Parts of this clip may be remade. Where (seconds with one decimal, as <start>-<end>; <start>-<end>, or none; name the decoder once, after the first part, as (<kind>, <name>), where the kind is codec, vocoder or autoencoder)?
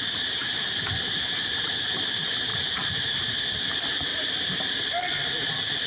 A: 2.5-3.6 (vocoder, BigVGAN v2); 4.1-4.7